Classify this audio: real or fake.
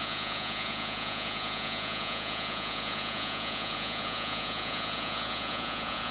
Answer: fake